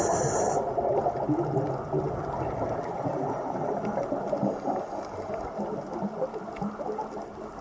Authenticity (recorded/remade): recorded